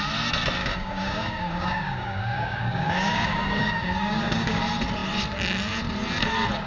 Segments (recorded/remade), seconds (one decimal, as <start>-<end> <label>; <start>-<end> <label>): 0.0-0.6 recorded; 0.6-4.6 remade; 4.6-6.7 recorded